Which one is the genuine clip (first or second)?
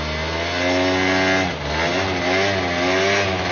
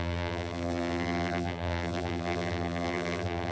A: first